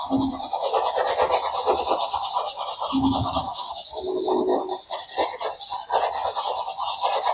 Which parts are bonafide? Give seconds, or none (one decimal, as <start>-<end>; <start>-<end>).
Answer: 0.0-3.4; 3.9-7.3